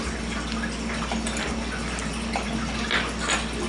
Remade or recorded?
recorded